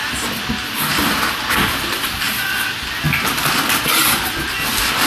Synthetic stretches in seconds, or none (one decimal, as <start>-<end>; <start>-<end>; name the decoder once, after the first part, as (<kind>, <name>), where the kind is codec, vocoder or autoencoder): none